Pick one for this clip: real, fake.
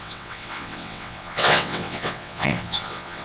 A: fake